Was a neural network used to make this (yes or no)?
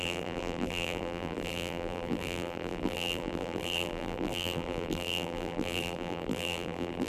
yes